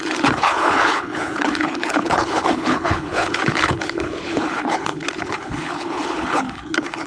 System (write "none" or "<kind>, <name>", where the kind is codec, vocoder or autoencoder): codec, HILCodec